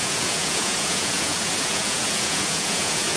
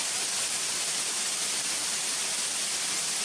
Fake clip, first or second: first